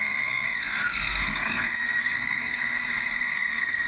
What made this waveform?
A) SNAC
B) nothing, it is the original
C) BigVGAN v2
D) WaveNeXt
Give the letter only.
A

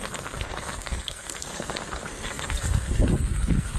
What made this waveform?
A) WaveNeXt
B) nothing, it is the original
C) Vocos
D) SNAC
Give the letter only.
D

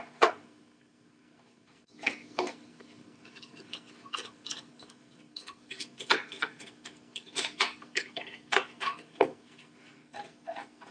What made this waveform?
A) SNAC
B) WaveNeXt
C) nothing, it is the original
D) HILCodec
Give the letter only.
A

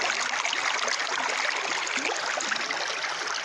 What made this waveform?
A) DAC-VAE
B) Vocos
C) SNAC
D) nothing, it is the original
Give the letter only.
D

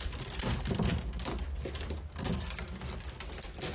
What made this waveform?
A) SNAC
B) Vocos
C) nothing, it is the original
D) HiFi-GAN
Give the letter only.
C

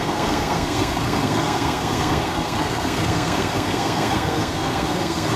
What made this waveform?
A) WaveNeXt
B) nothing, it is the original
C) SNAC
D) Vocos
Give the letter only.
C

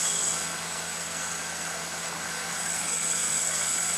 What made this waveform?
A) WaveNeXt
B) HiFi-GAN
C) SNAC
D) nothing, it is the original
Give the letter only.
C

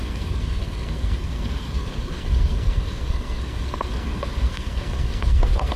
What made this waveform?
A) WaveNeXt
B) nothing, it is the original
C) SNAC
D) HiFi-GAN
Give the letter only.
C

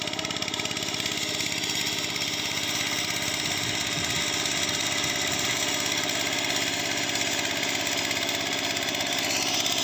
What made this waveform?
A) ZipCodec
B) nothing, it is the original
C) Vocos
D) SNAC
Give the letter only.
B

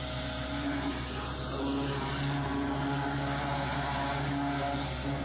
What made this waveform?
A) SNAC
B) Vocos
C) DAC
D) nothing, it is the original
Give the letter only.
D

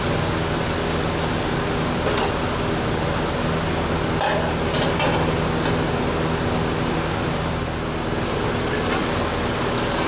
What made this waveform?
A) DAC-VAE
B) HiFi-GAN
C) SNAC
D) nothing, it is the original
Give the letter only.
D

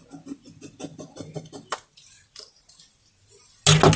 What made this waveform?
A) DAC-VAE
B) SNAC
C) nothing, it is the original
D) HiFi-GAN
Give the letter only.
C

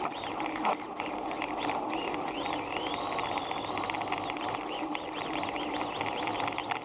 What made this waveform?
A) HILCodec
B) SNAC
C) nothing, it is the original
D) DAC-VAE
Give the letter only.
C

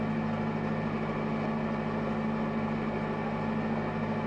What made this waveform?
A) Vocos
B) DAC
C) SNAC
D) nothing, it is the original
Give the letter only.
D